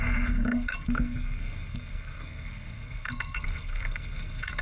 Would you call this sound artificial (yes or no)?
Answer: yes